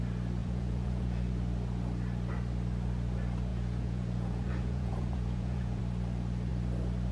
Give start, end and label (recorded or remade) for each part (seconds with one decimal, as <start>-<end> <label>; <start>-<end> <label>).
0.0-0.4 recorded; 0.4-1.3 remade; 1.3-3.5 recorded; 3.5-5.8 remade; 5.8-7.1 recorded